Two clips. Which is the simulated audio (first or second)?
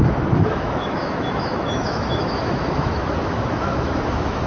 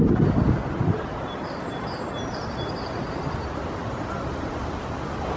first